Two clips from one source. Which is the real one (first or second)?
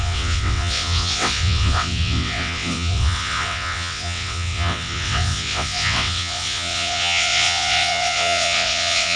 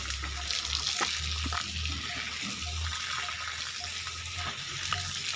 second